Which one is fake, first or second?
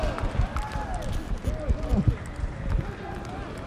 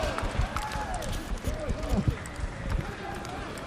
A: second